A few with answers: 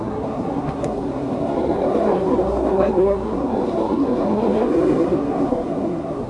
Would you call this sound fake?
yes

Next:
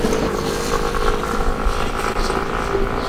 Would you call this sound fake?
no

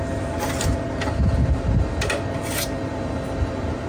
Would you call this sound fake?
no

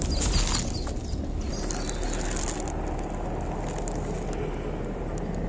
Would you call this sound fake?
no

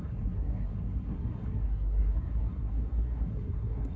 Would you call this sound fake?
yes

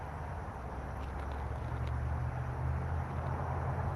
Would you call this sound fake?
no